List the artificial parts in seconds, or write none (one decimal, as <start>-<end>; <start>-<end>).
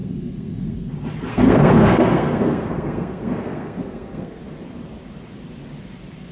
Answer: 0.0-0.9; 1.3-4.4